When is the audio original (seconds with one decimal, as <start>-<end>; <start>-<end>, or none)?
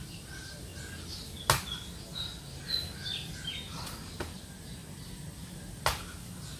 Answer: 0.0-6.6